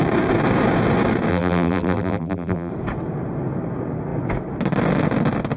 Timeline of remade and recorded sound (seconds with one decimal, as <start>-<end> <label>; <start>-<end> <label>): 0.0-1.3 recorded; 1.3-2.7 remade; 2.7-5.6 recorded